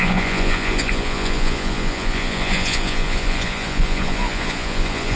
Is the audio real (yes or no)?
no